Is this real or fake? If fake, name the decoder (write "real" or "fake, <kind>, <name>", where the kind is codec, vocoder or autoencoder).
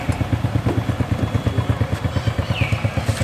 real